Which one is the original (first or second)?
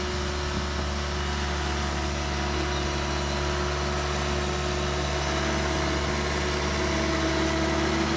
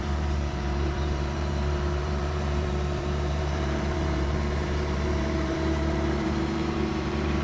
first